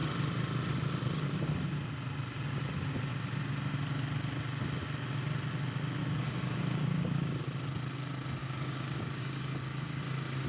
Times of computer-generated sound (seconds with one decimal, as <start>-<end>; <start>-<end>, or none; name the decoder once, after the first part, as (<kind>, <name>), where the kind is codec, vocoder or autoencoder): 6.0-7.4 (codec, DAC); 8.4-10.0